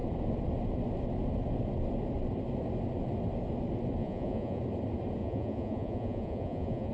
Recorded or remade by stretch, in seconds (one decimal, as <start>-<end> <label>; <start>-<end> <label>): 0.0-4.0 recorded; 4.0-4.6 remade; 4.6-5.2 recorded; 5.2-6.9 remade